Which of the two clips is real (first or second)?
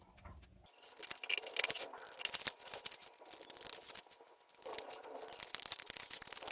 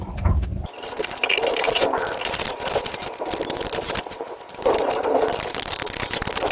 first